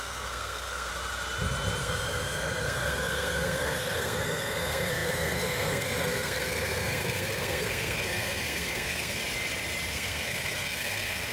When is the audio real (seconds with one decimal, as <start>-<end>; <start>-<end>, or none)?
0.9-1.8; 9.2-9.9